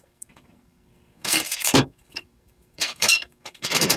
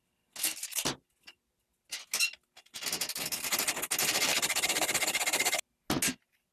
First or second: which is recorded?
second